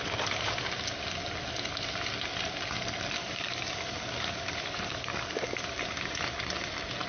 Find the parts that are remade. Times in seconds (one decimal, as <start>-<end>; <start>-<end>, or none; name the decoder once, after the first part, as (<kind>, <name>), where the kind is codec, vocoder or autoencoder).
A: 3.2-5.8 (codec, DAC)